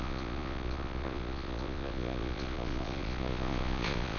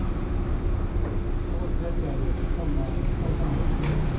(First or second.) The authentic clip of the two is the second